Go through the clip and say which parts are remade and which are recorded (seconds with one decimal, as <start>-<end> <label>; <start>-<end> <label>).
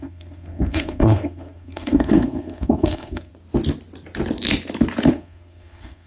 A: 0.0-3.3 remade; 3.3-5.1 recorded; 5.1-6.1 remade